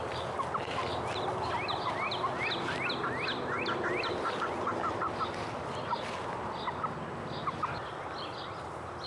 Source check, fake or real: real